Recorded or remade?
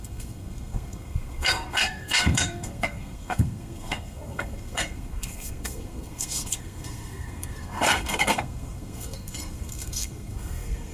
remade